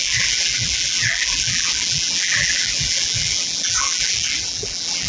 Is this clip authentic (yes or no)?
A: no